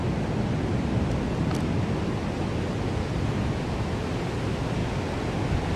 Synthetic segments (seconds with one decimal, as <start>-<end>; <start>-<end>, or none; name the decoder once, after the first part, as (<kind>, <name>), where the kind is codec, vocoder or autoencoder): none